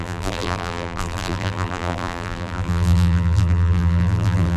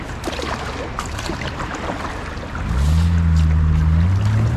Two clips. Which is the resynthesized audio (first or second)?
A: first